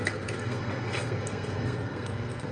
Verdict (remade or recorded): remade